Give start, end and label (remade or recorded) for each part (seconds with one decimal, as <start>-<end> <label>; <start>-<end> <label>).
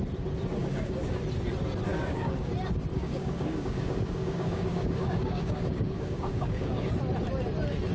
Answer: 0.0-0.6 recorded; 0.6-1.2 remade; 1.2-1.9 recorded; 1.9-2.5 remade; 2.5-2.9 recorded; 2.9-6.9 remade; 6.9-7.9 recorded